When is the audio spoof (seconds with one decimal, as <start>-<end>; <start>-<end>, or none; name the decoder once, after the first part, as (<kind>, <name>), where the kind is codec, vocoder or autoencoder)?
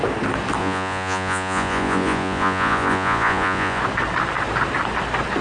0.6-3.8 (vocoder, Vocos)